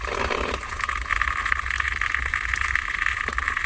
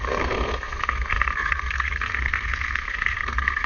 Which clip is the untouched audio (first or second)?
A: first